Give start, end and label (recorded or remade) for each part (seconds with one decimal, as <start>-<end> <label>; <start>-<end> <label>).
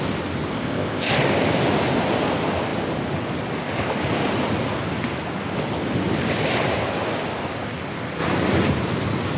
0.0-0.5 recorded; 0.5-1.1 remade; 1.1-9.4 recorded